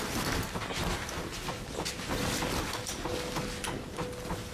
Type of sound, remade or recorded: recorded